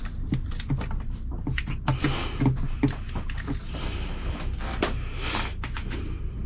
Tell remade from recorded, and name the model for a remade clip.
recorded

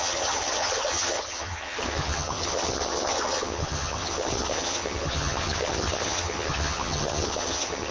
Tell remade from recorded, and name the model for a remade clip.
remade, vocoder, HiFi-GAN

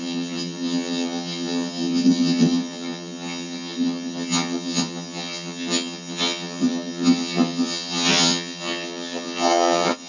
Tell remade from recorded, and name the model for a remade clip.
remade, vocoder, HiFi-GAN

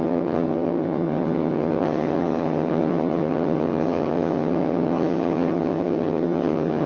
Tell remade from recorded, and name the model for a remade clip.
remade, vocoder, HiFi-GAN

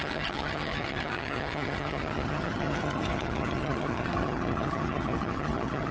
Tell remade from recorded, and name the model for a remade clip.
remade, vocoder, HiFi-GAN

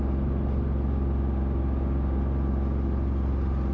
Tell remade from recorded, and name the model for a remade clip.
recorded